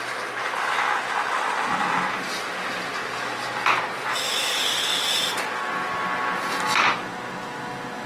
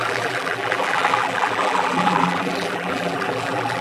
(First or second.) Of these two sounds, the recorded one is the first